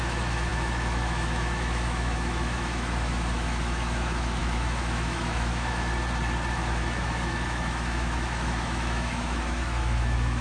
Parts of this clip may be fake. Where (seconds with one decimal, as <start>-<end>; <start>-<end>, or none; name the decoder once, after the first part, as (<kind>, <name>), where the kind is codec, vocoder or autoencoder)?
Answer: 0.0-5.9 (autoencoder, DAC-VAE); 6.5-10.4